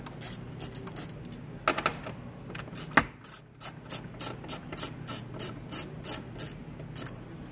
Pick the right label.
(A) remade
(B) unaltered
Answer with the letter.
B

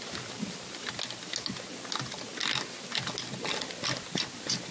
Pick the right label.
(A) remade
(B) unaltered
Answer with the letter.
B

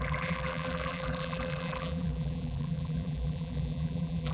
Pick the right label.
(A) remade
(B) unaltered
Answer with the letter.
A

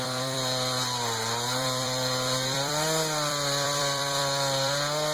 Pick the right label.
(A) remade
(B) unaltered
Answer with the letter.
A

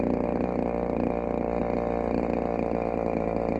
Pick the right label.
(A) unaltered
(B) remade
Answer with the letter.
A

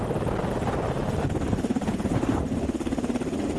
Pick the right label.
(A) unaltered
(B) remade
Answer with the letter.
A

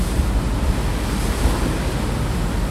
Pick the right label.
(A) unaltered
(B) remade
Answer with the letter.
A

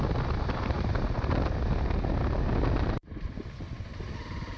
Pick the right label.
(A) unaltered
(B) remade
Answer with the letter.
A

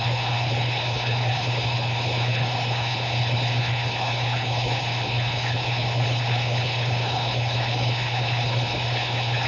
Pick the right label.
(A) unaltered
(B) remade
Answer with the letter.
B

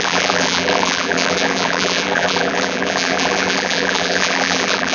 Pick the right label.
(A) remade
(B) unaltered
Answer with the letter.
A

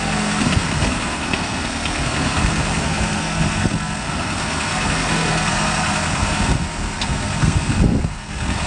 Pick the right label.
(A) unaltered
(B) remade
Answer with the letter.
B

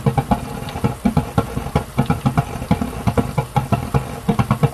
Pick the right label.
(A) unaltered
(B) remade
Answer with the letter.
A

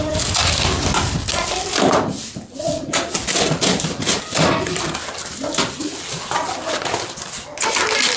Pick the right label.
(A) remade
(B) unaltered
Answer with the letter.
B